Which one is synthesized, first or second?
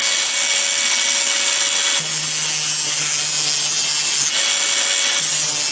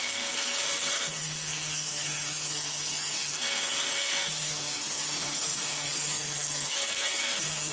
second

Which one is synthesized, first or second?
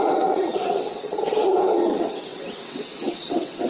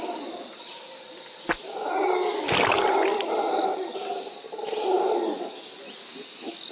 first